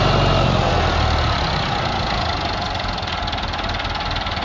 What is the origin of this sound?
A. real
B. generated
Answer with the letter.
A